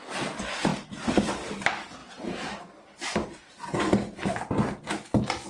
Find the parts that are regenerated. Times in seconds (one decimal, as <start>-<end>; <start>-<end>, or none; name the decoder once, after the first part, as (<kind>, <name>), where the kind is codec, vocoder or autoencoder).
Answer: 2.0-3.8 (vocoder, BigVGAN v2)